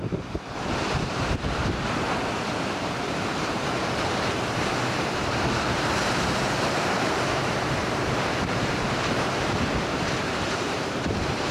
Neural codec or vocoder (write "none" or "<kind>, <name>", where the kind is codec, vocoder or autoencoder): vocoder, BigVGAN v2